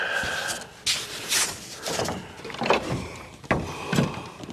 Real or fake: real